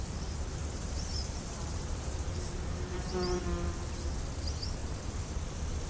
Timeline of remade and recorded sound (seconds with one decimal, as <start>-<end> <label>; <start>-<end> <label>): 0.0-0.6 recorded; 0.6-3.4 remade; 3.4-4.8 recorded; 4.8-5.9 remade